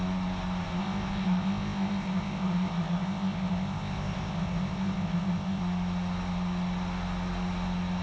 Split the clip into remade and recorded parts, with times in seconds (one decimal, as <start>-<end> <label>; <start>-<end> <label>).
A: 0.0-0.8 recorded; 0.8-5.6 remade; 5.6-8.0 recorded

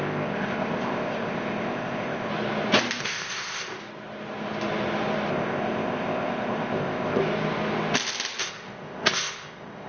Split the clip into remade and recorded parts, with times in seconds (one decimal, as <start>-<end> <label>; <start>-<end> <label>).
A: 0.0-2.3 remade; 2.3-3.0 recorded; 3.0-3.8 remade; 3.8-5.3 recorded; 5.3-7.2 remade; 7.2-8.4 recorded; 8.4-9.9 remade

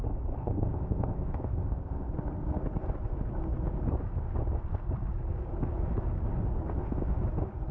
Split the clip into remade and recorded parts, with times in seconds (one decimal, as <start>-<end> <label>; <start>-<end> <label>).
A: 0.0-0.4 recorded; 0.4-2.1 remade; 2.1-6.7 recorded; 6.7-7.2 remade; 7.2-7.7 recorded

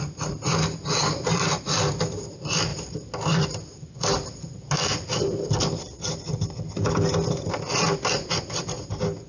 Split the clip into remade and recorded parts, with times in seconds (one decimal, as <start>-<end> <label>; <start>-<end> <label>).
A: 0.0-9.3 recorded

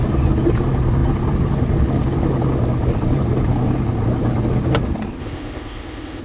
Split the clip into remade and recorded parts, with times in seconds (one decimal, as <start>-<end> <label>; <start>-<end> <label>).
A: 0.0-5.2 recorded; 5.2-6.2 remade